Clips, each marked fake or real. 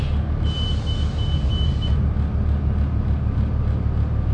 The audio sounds real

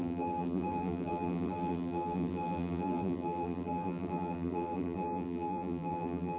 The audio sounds fake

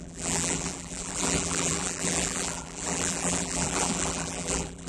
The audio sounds fake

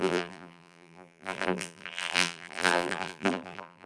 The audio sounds fake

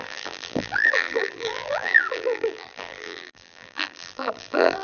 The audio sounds fake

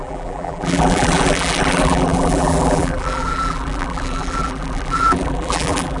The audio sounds fake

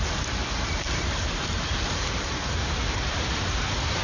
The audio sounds fake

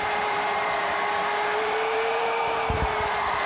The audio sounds fake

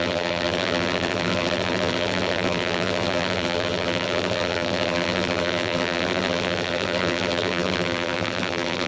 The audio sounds fake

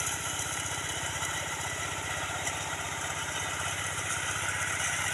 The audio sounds fake